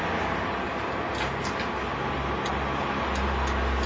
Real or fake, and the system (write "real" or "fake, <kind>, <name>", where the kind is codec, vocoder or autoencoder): real